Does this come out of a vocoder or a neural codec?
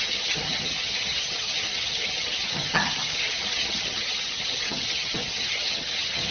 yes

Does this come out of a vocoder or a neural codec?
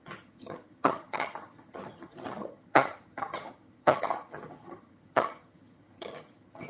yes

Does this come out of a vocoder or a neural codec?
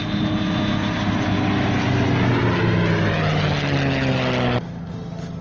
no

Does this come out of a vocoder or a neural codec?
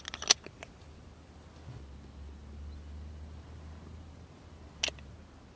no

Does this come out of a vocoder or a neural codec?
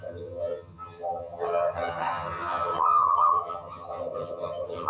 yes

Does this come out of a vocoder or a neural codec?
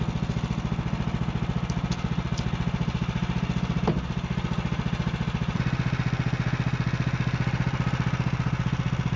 no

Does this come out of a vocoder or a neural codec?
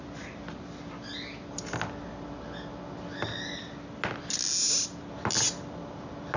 no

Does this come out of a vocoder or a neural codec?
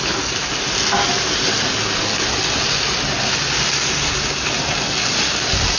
no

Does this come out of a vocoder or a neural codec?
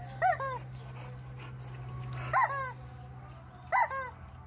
no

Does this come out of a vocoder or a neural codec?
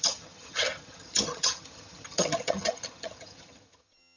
yes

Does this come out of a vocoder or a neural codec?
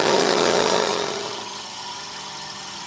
yes